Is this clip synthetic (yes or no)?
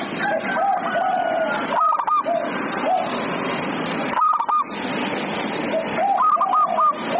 no